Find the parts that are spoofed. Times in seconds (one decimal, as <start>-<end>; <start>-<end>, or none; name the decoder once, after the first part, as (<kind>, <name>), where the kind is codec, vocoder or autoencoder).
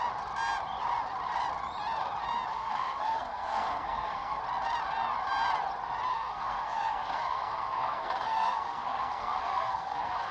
2.5-4.4 (codec, SNAC); 6.1-10.3